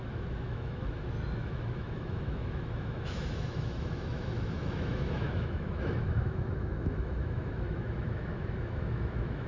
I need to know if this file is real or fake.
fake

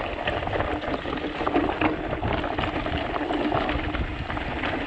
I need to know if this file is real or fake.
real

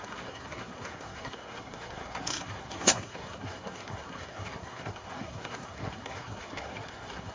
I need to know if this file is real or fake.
fake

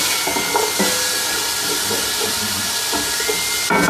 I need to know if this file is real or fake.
real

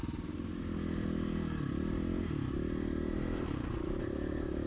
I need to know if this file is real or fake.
real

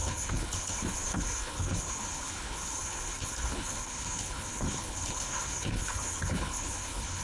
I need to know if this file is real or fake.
fake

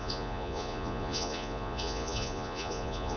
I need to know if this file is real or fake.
fake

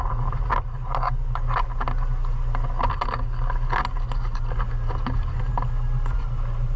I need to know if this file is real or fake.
real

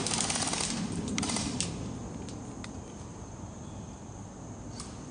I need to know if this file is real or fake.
real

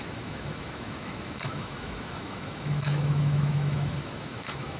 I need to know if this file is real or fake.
fake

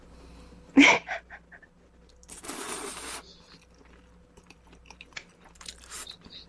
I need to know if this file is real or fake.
real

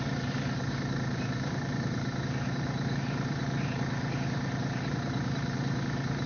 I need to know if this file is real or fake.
fake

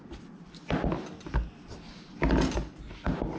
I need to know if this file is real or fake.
real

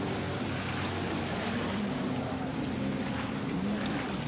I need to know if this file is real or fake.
real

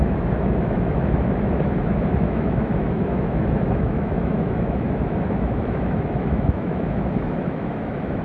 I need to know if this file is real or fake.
fake